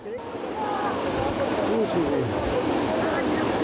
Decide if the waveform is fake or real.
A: real